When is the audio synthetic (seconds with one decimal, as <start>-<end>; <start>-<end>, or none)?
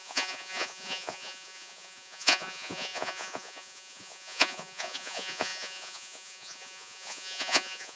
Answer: 0.0-8.0